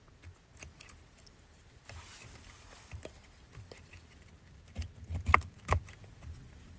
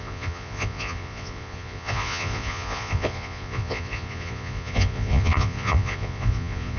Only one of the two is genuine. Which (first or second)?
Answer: first